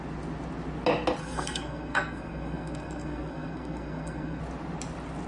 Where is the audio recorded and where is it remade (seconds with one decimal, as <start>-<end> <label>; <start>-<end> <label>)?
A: 0.0-1.2 recorded; 1.2-4.4 remade; 4.4-5.3 recorded